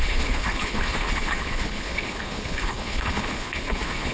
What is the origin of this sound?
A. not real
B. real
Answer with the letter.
A